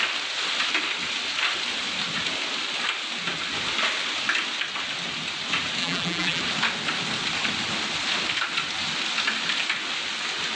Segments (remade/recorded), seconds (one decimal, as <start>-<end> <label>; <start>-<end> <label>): 0.0-5.8 recorded; 5.8-6.4 remade; 6.4-10.6 recorded